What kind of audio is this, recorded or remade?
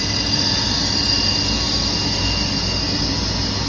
recorded